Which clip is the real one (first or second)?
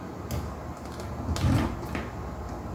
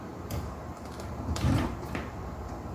first